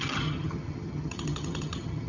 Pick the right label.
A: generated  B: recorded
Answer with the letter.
A